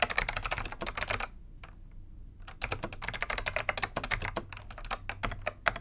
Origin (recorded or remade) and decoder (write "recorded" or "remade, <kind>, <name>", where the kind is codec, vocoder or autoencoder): recorded